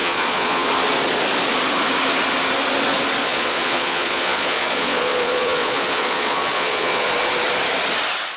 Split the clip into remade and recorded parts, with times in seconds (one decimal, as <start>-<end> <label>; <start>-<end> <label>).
0.0-0.7 remade; 0.7-3.2 recorded; 3.2-7.1 remade; 7.1-8.4 recorded

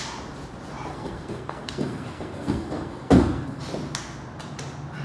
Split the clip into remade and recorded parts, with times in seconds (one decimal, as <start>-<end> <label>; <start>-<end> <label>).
0.0-0.9 recorded; 0.9-3.6 remade; 3.6-5.0 recorded

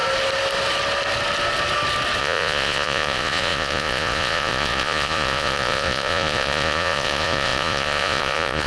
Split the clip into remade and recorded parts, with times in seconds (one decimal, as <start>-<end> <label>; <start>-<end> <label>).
0.0-2.2 recorded; 2.2-8.7 remade

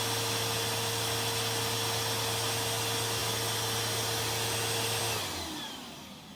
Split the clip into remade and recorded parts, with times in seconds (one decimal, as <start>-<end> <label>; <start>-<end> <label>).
0.0-6.4 recorded

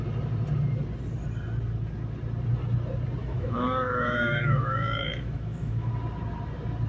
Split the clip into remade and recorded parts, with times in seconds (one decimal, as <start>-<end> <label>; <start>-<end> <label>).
0.0-3.2 recorded; 3.2-5.9 remade; 5.9-6.9 recorded